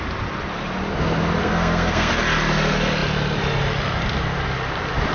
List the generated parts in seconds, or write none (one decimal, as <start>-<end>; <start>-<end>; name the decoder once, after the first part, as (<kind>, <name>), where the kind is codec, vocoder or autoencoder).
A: 1.4-2.1 (codec, SNAC)